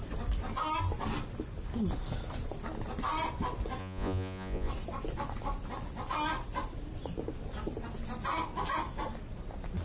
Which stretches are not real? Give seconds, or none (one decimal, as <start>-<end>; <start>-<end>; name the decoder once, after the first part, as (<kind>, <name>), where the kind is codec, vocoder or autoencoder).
3.8-4.7 (vocoder, Vocos)